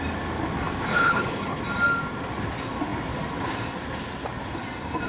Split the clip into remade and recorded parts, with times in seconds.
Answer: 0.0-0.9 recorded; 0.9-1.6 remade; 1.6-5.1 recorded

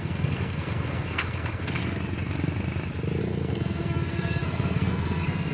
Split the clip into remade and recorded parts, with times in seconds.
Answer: 0.0-1.8 remade; 1.8-3.2 recorded; 3.2-5.5 remade

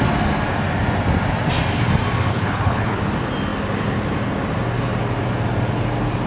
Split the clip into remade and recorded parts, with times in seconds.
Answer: 0.0-2.3 recorded; 2.3-3.0 remade; 3.0-6.3 recorded